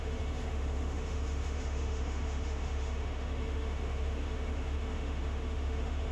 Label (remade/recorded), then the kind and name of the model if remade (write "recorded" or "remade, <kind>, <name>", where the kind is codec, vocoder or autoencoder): remade, autoencoder, DAC-VAE